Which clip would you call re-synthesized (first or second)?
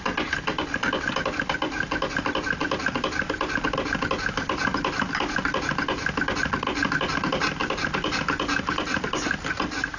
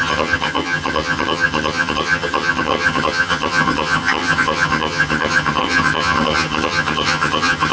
second